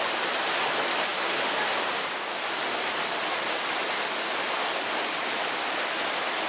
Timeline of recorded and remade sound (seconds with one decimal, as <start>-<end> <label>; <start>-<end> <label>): 0.0-6.5 recorded